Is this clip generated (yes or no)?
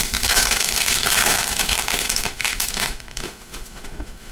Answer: yes